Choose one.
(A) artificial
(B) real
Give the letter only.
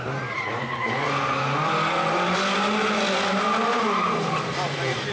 B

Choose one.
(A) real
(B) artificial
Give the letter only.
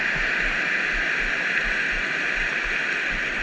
A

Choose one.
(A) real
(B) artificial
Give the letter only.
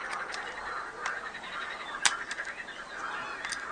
A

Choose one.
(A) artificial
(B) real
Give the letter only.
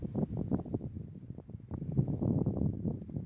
B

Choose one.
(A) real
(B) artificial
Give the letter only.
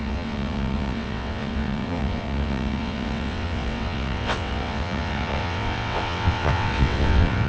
B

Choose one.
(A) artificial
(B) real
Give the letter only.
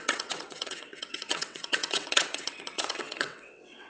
A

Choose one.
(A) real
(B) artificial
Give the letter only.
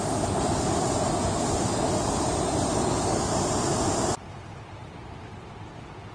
A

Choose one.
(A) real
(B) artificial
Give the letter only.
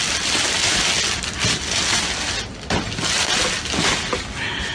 A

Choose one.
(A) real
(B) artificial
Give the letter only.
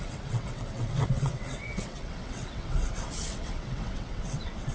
B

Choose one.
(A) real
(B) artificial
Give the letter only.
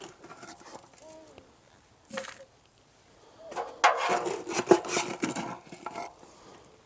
A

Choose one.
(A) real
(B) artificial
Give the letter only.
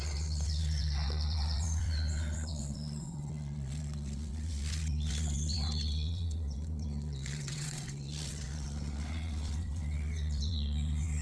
B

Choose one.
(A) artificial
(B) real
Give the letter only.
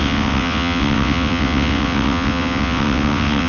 A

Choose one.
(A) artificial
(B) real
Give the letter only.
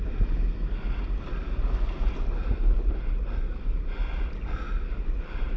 B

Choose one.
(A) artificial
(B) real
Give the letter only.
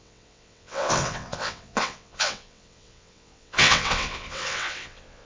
A